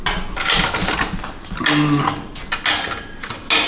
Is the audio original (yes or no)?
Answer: yes